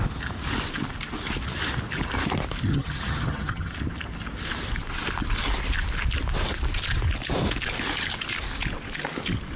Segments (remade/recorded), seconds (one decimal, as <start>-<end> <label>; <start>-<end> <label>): 0.0-2.7 recorded; 2.7-3.7 remade; 3.7-9.6 recorded